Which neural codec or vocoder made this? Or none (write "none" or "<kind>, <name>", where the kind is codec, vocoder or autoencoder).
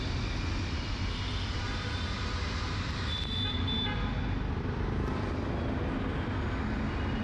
none